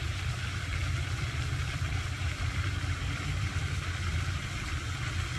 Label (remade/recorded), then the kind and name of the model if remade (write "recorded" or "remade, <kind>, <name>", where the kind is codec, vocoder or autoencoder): remade, vocoder, BigVGAN v2